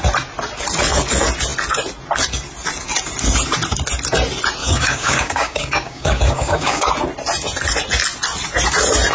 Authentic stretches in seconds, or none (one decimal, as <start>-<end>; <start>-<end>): 0.0-4.6; 6.9-9.1